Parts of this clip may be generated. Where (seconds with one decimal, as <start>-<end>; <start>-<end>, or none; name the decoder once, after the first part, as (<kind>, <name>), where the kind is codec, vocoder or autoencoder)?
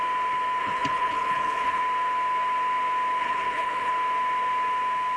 0.6-1.8 (codec, HILCodec); 3.2-3.9